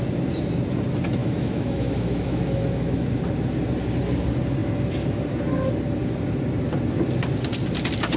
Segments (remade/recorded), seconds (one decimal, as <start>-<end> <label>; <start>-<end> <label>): 0.0-1.2 recorded; 1.2-3.2 remade; 3.2-8.2 recorded